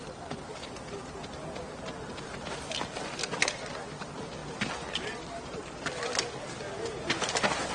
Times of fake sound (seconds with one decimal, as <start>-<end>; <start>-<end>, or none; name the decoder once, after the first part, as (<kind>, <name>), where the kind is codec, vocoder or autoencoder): none